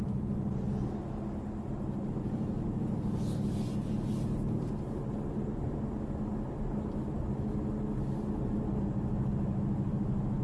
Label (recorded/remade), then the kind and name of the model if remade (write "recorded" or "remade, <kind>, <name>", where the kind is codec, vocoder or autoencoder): recorded